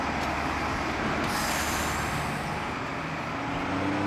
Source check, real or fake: real